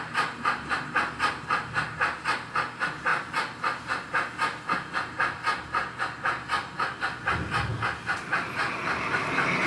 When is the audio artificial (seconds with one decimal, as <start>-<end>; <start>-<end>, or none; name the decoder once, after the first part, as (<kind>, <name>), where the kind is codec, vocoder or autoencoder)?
none